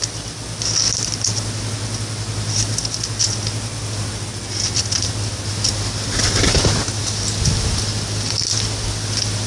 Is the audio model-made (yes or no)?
no